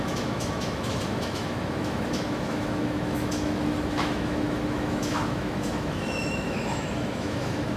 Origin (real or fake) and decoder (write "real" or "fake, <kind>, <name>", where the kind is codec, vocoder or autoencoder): fake, autoencoder, DAC-VAE